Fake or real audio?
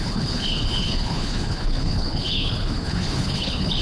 fake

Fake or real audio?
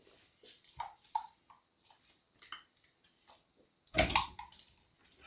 real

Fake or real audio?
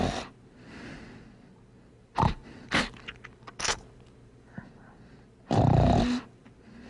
fake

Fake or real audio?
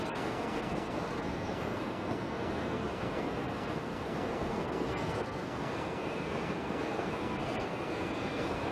fake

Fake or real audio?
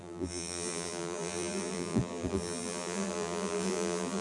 fake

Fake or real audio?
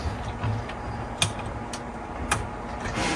real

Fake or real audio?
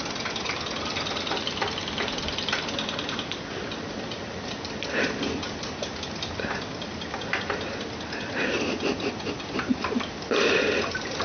fake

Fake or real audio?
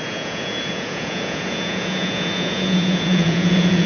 fake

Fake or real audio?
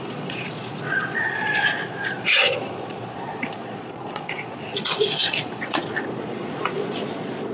fake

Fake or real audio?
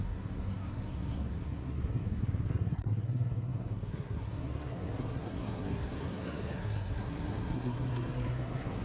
fake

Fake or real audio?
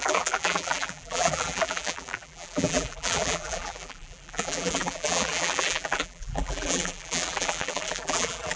fake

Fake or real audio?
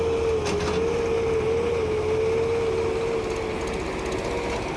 real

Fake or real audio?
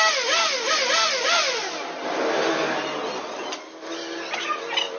real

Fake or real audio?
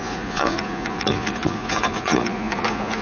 fake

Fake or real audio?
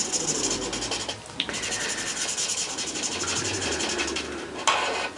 real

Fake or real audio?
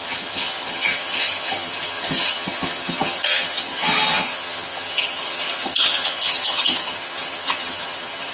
fake